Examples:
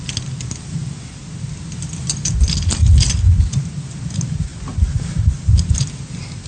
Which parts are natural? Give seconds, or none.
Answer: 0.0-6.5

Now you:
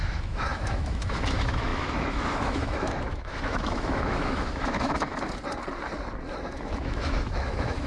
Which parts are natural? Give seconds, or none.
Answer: 5.1-6.5

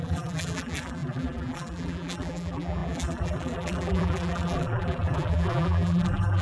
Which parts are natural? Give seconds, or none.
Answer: none

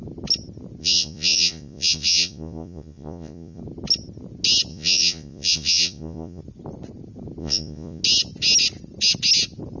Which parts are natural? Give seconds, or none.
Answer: 0.0-0.8; 3.6-4.7; 6.4-7.4; 8.0-9.8

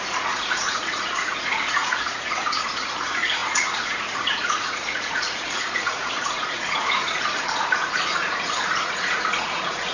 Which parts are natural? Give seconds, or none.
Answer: none

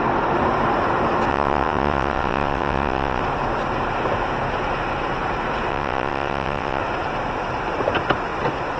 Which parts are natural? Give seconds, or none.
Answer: 0.0-1.3; 3.2-5.7; 6.8-8.8